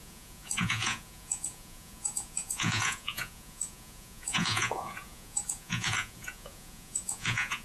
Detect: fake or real fake